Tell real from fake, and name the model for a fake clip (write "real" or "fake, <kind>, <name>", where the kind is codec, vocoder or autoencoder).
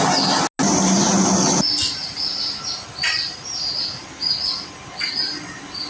real